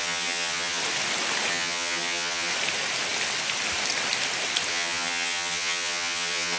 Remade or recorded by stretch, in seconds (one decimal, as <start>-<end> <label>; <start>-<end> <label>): 0.0-0.8 remade; 0.8-1.5 recorded; 1.5-2.5 remade; 2.5-4.7 recorded; 4.7-6.6 remade

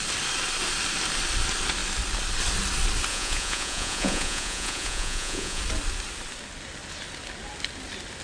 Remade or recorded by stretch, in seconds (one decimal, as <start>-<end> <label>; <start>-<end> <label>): 0.0-3.1 recorded; 3.1-5.6 remade; 5.6-8.2 recorded